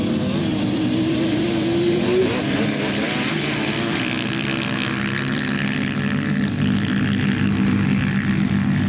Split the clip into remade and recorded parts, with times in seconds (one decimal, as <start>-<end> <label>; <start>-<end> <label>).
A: 0.0-0.5 recorded; 0.5-4.0 remade; 4.0-8.9 recorded